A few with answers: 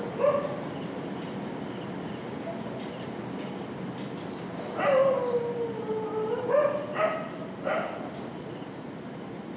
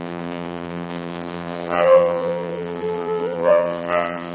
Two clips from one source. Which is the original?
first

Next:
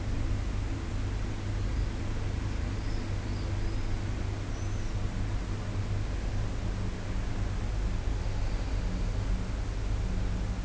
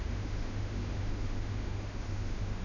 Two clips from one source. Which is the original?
first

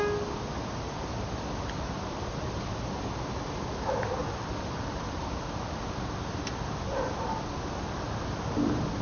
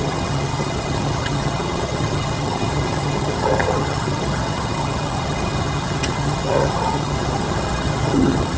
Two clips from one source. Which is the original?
first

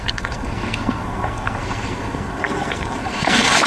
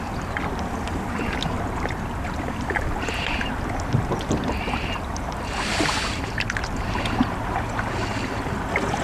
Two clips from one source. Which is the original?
second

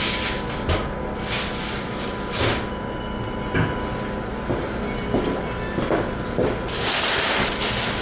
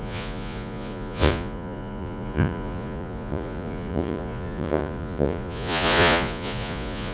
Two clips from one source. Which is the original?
first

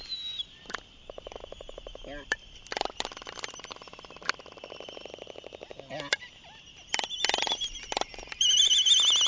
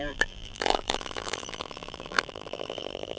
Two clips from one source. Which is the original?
first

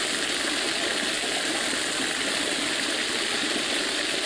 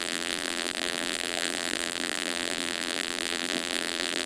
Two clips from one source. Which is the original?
first